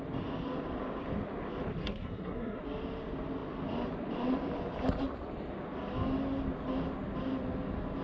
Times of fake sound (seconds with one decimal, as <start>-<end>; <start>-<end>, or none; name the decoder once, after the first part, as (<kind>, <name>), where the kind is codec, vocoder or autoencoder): 1.8-2.6 (codec, SNAC)